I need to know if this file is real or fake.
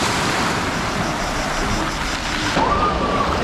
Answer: real